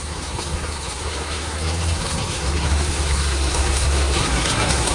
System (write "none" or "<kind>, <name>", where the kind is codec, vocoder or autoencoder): codec, SNAC